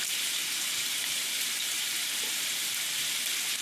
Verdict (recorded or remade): remade